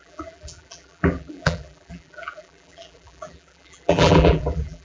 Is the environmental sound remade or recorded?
remade